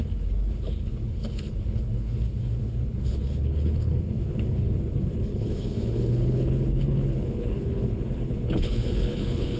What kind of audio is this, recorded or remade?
remade